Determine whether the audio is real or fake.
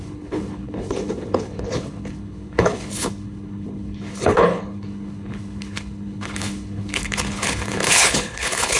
fake